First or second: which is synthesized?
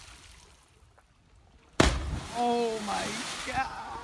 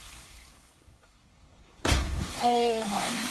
second